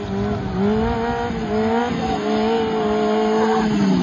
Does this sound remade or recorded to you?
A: recorded